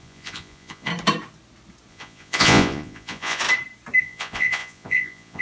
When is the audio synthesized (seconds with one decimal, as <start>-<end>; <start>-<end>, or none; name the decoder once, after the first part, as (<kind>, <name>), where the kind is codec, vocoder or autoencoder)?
0.0-0.9 (vocoder, Vocos); 1.9-3.4; 4.0-5.4